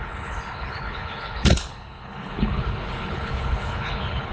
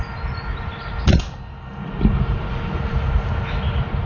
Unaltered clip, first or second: second